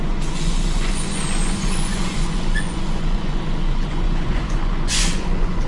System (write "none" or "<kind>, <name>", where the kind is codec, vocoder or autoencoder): vocoder, Vocos